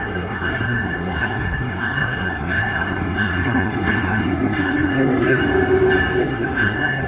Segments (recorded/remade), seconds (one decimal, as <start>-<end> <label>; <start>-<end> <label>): 0.0-5.4 remade; 5.4-6.2 recorded; 6.2-7.1 remade